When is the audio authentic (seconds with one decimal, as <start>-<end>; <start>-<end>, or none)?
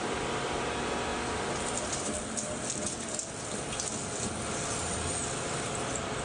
0.0-6.2